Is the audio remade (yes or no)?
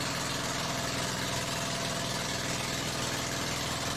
no